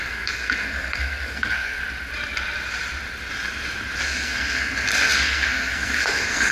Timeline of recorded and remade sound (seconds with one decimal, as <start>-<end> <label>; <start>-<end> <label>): 0.0-1.8 remade; 1.8-4.0 recorded; 4.0-6.5 remade